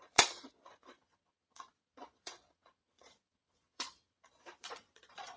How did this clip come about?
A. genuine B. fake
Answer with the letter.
B